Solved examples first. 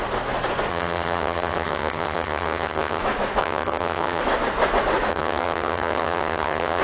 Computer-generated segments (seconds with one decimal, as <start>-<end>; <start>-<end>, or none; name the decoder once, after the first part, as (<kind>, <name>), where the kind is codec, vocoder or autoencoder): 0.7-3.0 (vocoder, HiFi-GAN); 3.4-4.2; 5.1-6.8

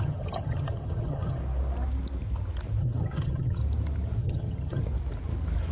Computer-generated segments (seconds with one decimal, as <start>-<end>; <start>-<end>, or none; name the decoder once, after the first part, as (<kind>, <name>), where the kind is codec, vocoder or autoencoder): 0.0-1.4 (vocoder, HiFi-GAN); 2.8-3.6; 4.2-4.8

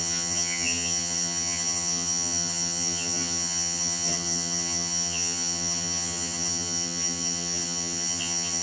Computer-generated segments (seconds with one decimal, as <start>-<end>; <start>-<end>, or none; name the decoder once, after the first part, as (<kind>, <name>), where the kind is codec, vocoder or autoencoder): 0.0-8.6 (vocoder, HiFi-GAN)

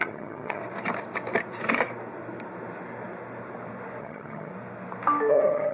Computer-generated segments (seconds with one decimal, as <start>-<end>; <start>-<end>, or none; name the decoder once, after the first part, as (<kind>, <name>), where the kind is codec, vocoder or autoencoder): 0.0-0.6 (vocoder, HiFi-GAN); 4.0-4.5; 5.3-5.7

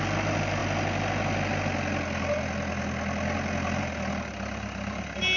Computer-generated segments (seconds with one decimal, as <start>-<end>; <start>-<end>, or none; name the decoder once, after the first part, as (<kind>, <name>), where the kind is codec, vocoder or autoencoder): none

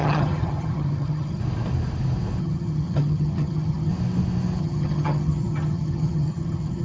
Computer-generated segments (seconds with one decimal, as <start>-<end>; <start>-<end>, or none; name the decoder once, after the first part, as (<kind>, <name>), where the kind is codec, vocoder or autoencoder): 0.0-1.4 (vocoder, HiFi-GAN); 2.4-3.9; 4.6-6.8